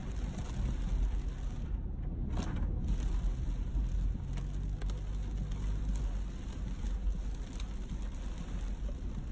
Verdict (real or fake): real